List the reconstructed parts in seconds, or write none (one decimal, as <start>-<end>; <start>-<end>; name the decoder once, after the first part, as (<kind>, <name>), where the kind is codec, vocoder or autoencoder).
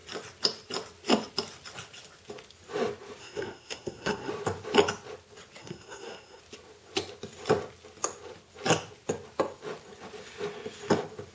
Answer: 3.2-4.3 (codec, SNAC); 5.6-6.4